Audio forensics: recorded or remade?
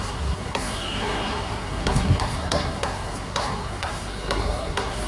remade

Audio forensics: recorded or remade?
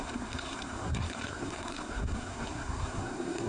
remade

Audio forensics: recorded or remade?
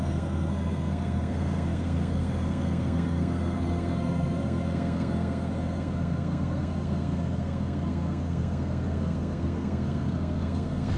remade